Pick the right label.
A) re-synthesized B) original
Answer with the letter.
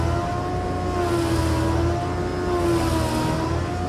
B